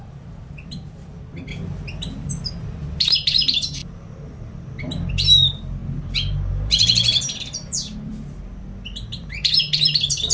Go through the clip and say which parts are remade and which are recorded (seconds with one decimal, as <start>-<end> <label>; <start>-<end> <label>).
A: 0.0-1.5 remade; 1.5-3.0 recorded; 3.0-3.8 remade; 3.8-5.1 recorded; 5.1-5.8 remade; 5.8-6.5 recorded; 6.5-8.1 remade; 8.1-9.2 recorded; 9.2-10.3 remade